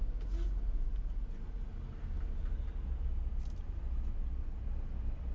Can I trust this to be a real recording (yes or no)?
yes